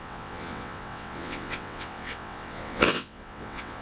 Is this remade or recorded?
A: remade